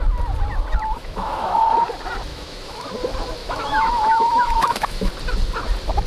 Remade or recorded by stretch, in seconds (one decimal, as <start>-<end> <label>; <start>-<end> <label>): 0.0-1.0 recorded; 1.0-1.6 remade; 1.6-2.3 recorded; 2.3-2.9 remade; 2.9-3.4 recorded; 3.4-5.1 remade; 5.1-6.1 recorded